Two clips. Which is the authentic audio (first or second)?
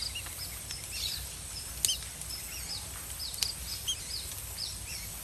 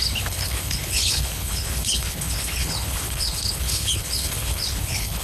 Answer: first